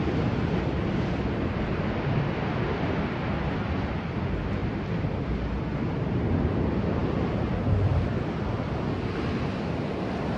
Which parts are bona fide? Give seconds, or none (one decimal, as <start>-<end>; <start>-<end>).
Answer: 0.0-4.6; 5.2-5.7; 6.3-10.4